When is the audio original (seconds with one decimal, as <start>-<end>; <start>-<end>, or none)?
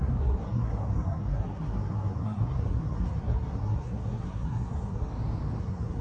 5.1-5.6